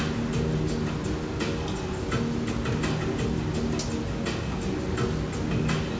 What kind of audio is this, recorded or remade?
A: recorded